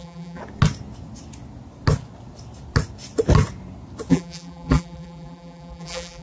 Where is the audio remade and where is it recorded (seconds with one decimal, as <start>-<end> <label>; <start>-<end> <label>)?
0.0-0.4 remade; 0.4-4.1 recorded; 4.1-6.2 remade